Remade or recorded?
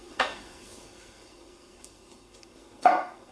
remade